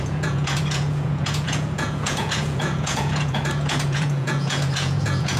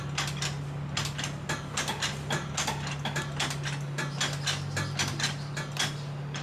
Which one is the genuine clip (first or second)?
second